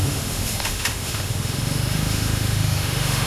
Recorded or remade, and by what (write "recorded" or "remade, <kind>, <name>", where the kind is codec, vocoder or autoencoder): remade, autoencoder, DAC-VAE